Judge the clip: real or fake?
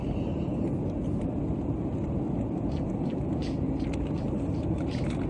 real